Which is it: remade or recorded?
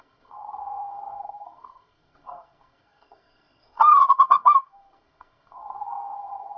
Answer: remade